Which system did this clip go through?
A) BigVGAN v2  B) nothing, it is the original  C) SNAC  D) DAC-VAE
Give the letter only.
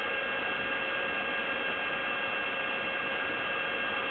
B